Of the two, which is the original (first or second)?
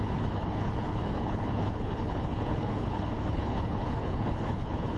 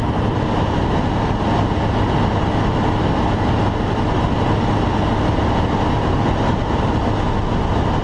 second